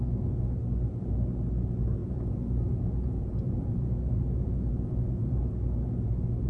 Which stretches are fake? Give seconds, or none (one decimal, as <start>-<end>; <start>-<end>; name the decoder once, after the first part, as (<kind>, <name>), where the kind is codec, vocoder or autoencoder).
2.0-5.5 (vocoder, Vocos)